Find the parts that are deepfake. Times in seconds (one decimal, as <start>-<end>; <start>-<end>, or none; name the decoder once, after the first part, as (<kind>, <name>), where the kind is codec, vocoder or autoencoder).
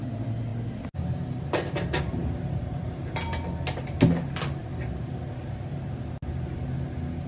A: none